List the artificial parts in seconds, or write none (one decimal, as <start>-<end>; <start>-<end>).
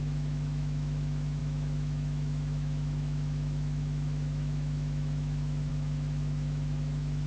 0.0-7.3